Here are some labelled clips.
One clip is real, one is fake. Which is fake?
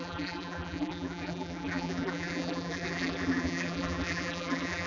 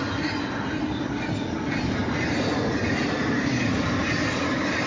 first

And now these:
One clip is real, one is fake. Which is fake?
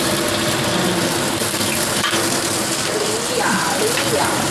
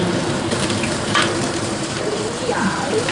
second